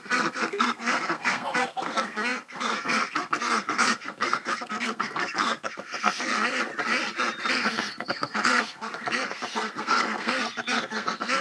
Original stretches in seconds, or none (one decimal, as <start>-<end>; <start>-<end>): 6.7-7.5